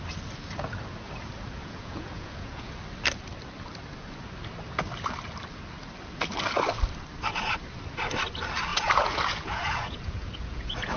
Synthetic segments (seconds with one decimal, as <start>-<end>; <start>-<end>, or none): 1.6-2.8; 8.7-11.0